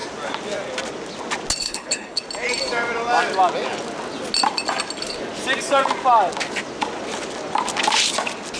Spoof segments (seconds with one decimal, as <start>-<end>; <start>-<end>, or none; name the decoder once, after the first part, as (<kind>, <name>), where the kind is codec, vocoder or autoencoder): 1.6-2.2 (codec, HILCodec)